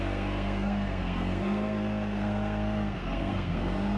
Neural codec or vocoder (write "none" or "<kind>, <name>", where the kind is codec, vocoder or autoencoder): codec, SNAC